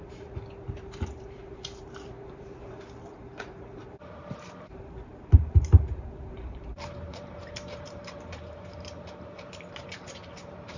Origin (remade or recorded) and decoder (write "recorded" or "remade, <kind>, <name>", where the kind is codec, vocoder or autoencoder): remade, vocoder, BigVGAN v2